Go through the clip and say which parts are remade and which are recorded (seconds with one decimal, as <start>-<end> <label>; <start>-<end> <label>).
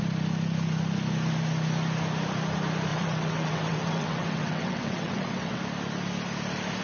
0.0-2.9 recorded; 2.9-5.6 remade; 5.6-6.8 recorded